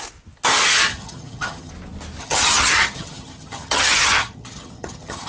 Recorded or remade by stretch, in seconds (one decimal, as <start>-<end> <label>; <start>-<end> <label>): 0.0-0.9 recorded; 0.9-1.7 remade; 1.7-2.2 recorded; 2.2-5.3 remade